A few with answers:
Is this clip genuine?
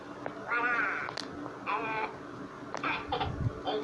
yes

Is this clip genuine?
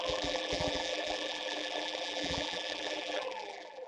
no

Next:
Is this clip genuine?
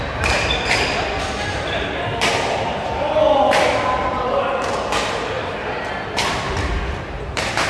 no